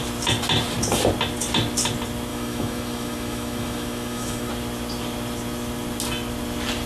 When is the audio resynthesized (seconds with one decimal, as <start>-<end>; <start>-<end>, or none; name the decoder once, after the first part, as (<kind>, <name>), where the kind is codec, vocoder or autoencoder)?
2.3-4.5 (autoencoder, DAC-VAE)